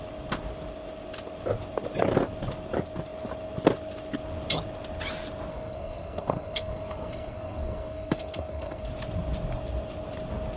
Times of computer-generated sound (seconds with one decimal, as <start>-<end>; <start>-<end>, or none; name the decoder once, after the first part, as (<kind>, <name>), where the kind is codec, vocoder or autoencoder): 5.5-8.9 (codec, SNAC)